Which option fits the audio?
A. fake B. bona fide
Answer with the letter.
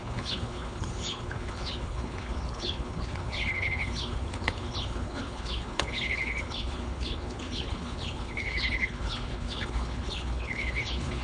A